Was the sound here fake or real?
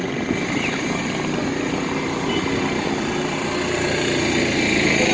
real